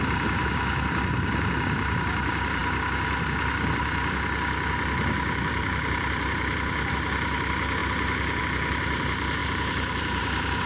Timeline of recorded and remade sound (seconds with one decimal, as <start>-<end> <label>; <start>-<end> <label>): 0.0-9.4 recorded; 9.4-10.7 remade